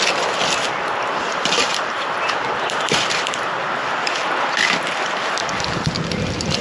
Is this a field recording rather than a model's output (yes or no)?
no